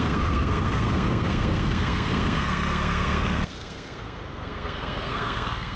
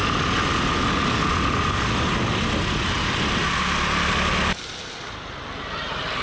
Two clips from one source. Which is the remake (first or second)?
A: first